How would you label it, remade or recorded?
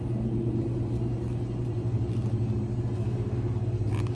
recorded